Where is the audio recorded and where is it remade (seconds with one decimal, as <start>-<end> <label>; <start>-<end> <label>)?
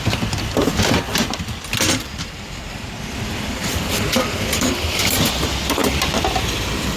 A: 0.0-1.1 recorded; 1.1-5.3 remade; 5.3-7.0 recorded